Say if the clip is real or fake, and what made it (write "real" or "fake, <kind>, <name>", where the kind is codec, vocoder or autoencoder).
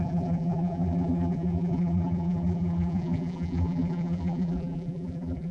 fake, vocoder, BigVGAN v2